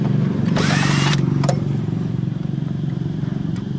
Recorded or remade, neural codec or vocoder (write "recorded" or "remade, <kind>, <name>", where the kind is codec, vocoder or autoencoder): remade, vocoder, BigVGAN v2